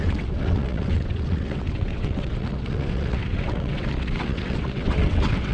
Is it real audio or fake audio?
fake